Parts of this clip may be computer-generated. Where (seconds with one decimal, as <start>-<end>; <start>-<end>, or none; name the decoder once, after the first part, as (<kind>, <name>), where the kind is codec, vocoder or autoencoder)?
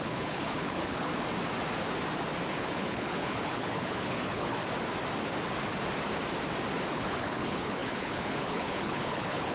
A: 0.0-1.1 (codec, HILCodec); 2.5-4.6; 6.9-9.5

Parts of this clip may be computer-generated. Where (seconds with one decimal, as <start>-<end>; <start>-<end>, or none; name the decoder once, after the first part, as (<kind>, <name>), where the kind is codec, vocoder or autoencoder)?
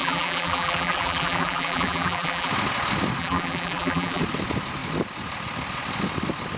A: 0.0-2.5 (vocoder, BigVGAN v2); 3.2-4.2